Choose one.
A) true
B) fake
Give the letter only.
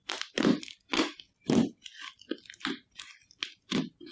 A